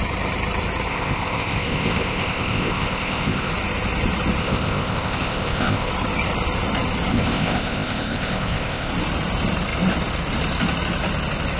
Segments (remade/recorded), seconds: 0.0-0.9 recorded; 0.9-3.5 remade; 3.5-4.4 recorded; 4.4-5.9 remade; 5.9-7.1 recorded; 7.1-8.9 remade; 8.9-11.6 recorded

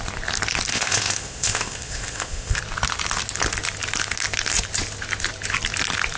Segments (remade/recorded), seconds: 0.0-0.7 recorded; 0.7-2.6 remade; 2.6-6.2 recorded